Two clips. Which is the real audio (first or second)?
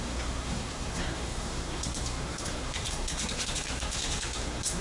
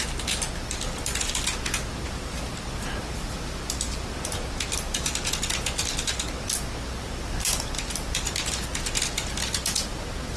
second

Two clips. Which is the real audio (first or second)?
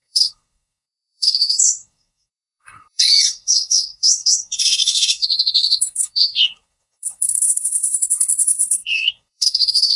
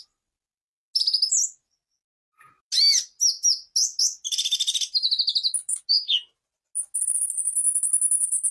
second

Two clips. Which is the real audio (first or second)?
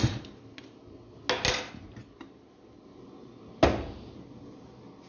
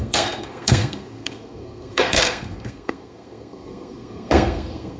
first